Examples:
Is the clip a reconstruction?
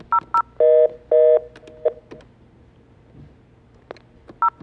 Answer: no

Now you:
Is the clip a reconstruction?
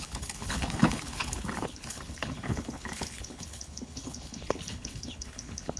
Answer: yes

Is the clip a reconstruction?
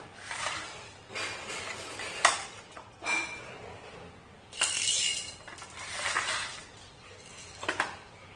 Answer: no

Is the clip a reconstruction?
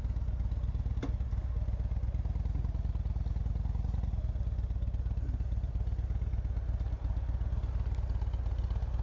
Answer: no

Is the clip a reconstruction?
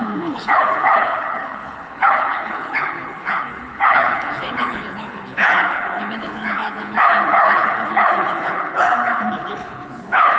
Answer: yes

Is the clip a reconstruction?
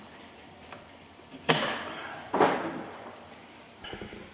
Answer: no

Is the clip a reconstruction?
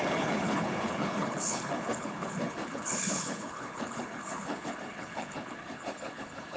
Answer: yes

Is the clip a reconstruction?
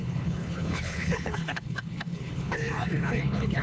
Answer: yes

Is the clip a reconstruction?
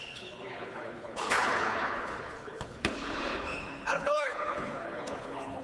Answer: yes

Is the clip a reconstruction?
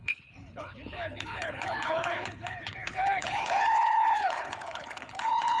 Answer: yes